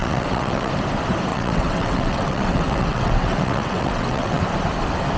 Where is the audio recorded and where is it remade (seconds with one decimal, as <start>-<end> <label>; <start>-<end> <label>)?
0.0-0.7 remade; 0.7-1.3 recorded; 1.3-4.4 remade; 4.4-5.2 recorded